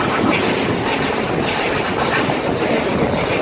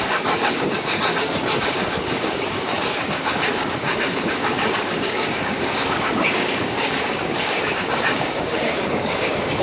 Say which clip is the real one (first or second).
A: first